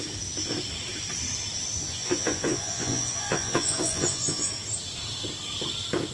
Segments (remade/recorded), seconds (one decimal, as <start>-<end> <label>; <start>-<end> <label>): 0.0-1.8 recorded; 1.8-4.5 remade; 4.5-6.1 recorded